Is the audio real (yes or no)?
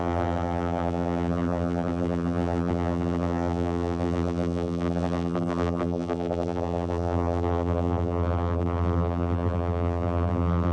no